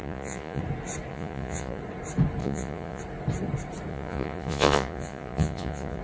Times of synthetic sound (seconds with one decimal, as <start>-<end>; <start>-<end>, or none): 0.0-0.6; 1.1-1.8; 2.4-3.0; 3.9-6.0